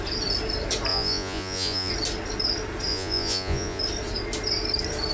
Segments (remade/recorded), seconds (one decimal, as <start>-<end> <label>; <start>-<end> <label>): 0.0-0.9 recorded; 0.9-1.9 remade; 1.9-2.9 recorded; 2.9-3.8 remade; 3.8-5.1 recorded